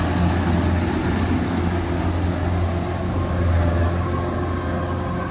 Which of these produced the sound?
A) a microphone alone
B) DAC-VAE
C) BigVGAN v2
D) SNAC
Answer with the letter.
A